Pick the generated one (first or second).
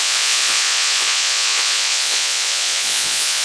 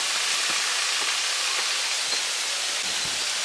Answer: first